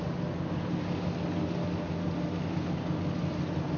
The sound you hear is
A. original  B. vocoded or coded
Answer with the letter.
A